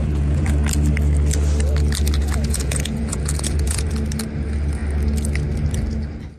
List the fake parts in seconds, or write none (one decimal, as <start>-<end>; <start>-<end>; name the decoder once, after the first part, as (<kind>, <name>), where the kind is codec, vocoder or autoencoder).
0.0-0.5 (vocoder, Vocos); 2.2-3.9

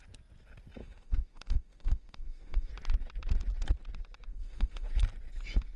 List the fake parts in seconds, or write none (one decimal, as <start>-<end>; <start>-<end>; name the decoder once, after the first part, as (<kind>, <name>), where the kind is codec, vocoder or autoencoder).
0.8-2.7 (autoencoder, DAC-VAE); 4.3-4.9